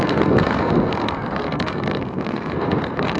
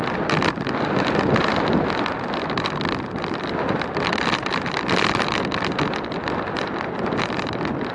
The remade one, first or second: first